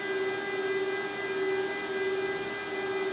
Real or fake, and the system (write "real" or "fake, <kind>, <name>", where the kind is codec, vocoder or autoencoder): real